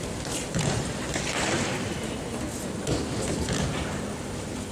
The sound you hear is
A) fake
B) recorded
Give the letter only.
B